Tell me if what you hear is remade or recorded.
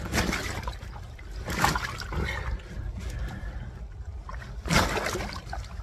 recorded